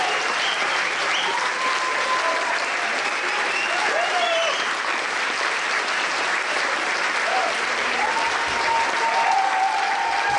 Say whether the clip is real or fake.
fake